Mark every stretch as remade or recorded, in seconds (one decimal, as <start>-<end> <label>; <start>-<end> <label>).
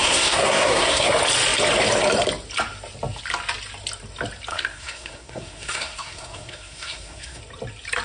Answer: 0.0-1.1 remade; 1.1-4.5 recorded; 4.5-7.4 remade; 7.4-8.0 recorded